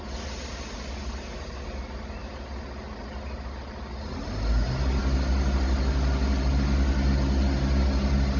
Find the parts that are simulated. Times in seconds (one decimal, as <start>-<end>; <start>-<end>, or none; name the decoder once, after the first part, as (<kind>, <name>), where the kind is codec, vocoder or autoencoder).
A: none

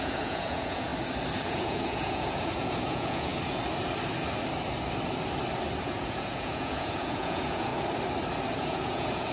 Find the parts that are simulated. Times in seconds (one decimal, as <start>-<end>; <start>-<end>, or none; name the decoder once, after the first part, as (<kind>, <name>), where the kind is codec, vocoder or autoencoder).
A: 0.0-0.9 (vocoder, Vocos); 1.4-3.3; 5.8-7.7; 8.5-9.3